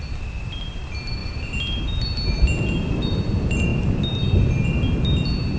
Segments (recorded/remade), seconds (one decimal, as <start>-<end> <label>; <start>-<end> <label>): 0.0-5.6 recorded